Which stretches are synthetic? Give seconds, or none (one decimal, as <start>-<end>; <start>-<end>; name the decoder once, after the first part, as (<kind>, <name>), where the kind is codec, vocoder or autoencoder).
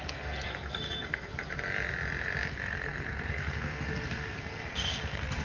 0.0-1.3 (codec, SNAC); 2.5-5.4